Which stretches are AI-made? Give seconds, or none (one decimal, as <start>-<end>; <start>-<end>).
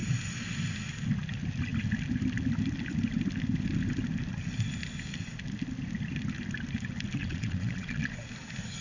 7.2-8.1